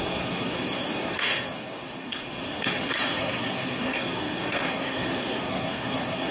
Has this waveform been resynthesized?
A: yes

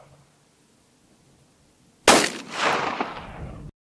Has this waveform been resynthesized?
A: no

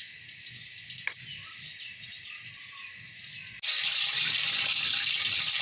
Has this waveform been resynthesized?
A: no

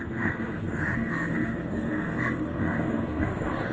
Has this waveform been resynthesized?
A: yes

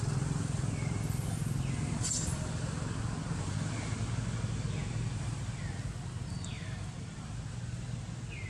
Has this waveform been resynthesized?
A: no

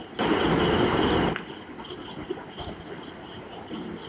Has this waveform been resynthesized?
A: no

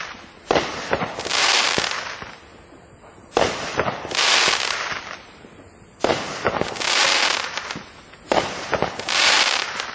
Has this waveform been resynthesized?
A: no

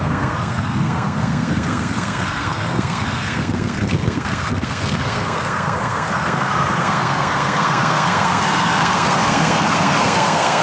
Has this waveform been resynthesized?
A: yes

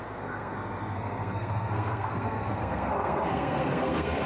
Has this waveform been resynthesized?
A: yes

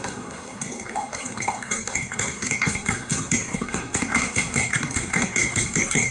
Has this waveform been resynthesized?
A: yes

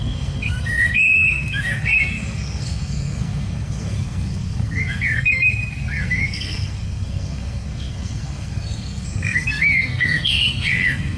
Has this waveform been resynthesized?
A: yes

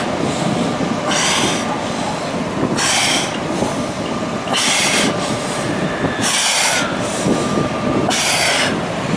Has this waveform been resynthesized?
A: no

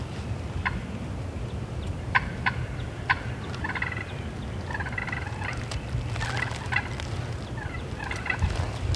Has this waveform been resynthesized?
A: no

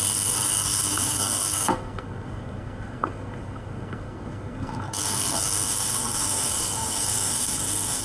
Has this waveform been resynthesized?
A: yes